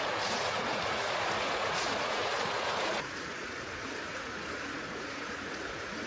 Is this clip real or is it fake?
fake